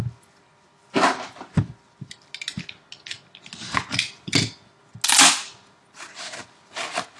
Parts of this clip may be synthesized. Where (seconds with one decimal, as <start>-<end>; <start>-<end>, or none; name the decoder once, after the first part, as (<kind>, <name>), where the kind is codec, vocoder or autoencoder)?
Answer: none